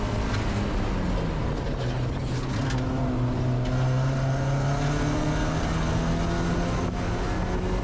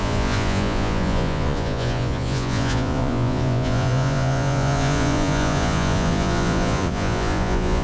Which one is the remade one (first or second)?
second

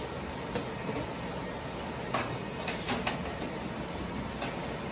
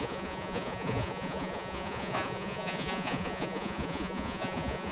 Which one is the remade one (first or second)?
second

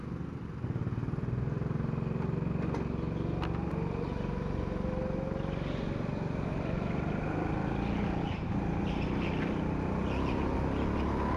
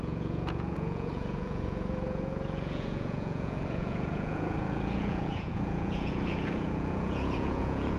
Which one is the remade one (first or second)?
second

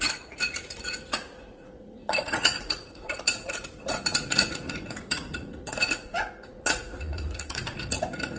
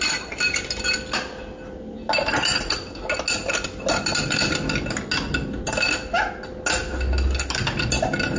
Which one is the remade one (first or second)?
first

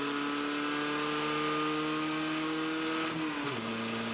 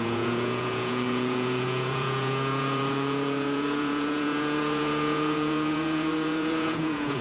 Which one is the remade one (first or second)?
second